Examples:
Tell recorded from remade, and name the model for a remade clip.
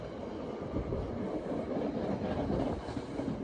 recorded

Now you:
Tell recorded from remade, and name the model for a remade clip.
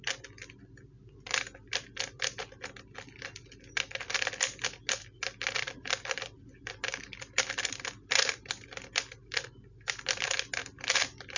recorded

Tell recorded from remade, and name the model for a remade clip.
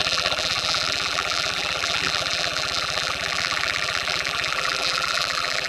remade, vocoder, BigVGAN v2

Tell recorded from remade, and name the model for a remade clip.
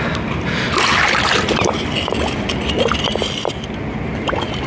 recorded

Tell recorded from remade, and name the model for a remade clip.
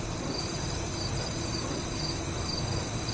recorded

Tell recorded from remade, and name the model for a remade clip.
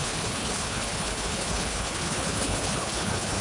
remade, codec, HILCodec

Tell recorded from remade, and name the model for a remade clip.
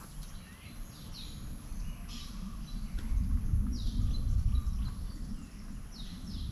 remade, vocoder, BigVGAN v2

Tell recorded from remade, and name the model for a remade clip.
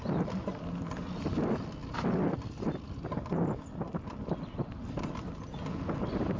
recorded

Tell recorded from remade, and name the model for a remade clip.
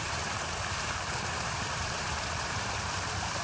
remade, vocoder, BigVGAN v2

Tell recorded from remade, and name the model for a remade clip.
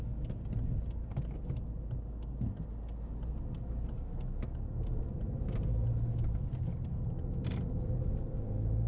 recorded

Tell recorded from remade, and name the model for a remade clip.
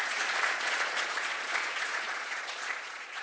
remade, vocoder, Vocos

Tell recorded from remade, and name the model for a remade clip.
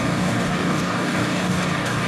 remade, codec, DAC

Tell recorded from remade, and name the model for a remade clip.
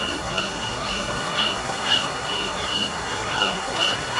remade, codec, SNAC